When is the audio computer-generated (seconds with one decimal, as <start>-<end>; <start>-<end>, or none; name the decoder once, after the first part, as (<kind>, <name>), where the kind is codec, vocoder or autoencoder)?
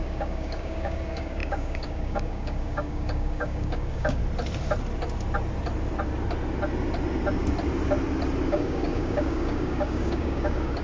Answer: 0.0-4.2 (codec, DAC); 8.5-10.8